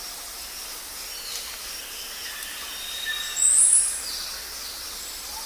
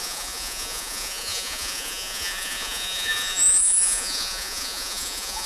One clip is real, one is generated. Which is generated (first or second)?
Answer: second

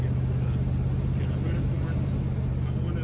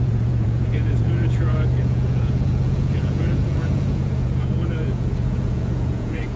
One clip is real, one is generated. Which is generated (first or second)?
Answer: second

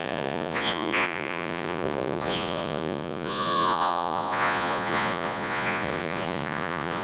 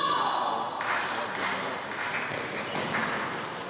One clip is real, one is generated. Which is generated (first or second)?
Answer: first